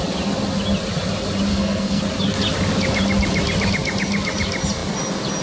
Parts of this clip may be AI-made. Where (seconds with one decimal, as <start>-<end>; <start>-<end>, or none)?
1.5-2.0

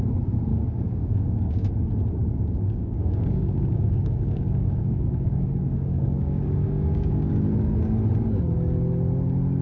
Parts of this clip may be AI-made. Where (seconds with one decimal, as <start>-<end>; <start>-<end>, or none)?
0.5-1.7; 2.2-7.3

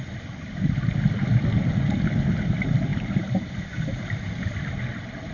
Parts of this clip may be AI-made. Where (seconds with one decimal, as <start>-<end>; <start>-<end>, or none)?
2.9-3.8

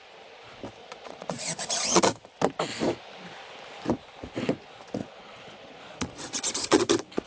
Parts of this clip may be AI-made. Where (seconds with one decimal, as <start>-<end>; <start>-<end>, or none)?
0.8-2.0; 5.0-6.8

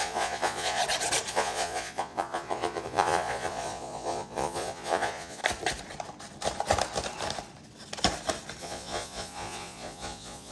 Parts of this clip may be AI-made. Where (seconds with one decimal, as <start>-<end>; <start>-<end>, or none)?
0.0-0.8; 1.3-5.4; 8.6-10.5

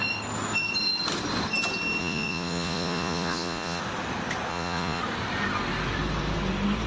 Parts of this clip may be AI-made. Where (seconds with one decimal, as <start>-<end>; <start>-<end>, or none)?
2.0-3.8; 4.5-5.0

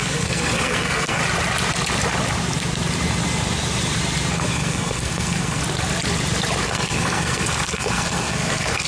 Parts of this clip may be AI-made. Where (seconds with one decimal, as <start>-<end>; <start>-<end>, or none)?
0.0-1.2; 4.3-5.6; 6.6-8.9

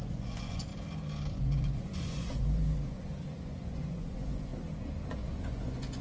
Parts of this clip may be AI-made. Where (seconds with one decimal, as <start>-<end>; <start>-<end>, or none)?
0.0-0.7; 1.3-4.5; 5.1-6.0